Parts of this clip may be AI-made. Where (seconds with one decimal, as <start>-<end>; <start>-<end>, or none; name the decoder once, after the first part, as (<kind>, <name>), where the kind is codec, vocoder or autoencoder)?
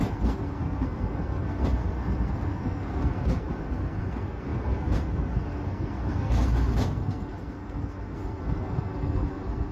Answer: 0.0-9.7 (codec, SNAC)